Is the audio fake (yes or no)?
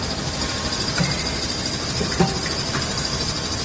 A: no